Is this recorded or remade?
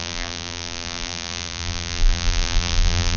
remade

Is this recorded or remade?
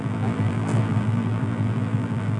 remade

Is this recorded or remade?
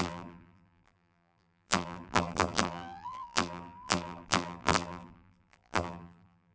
remade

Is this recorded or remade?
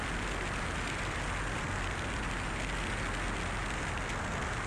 recorded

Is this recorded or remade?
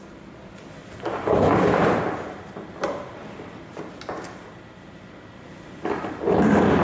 recorded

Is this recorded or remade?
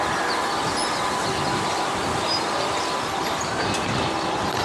recorded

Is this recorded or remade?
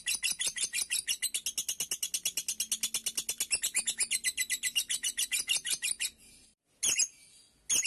recorded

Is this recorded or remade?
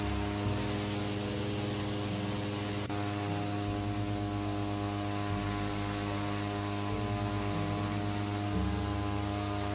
recorded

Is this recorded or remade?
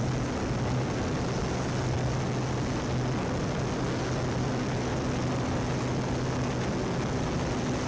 recorded